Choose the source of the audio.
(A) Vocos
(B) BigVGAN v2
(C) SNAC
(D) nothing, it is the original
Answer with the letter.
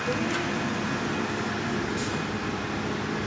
D